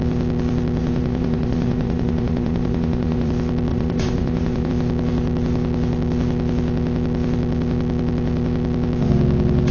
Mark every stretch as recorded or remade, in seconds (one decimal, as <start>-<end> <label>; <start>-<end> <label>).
0.0-0.8 recorded; 0.8-3.3 remade; 3.3-3.7 recorded; 3.7-4.7 remade; 4.7-9.7 recorded